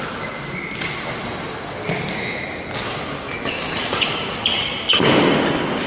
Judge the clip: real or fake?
real